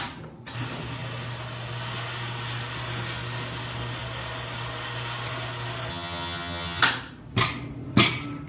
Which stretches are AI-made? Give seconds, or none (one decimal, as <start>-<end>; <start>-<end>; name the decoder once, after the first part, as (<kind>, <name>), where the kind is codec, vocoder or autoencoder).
5.9-6.8 (vocoder, HiFi-GAN)

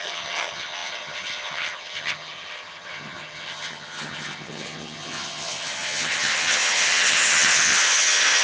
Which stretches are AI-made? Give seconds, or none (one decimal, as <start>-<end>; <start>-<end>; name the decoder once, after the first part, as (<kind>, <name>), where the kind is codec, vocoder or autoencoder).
0.0-8.4 (vocoder, HiFi-GAN)